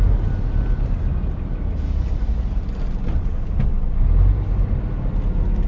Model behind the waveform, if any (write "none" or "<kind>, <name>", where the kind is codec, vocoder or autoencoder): none